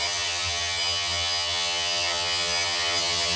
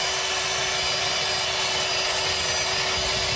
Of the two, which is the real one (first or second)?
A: second